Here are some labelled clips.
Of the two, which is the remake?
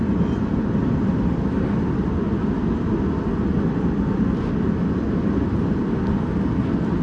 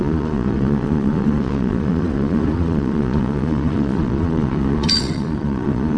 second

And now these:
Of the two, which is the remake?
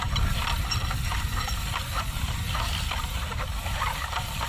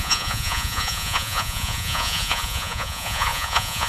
second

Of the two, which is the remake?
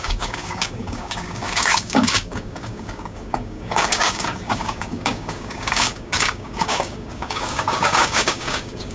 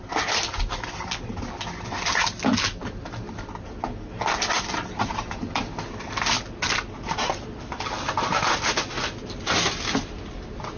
first